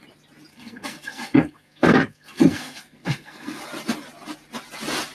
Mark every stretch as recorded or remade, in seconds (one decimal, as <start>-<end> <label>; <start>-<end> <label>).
0.0-0.5 recorded; 0.5-3.6 remade; 3.6-5.1 recorded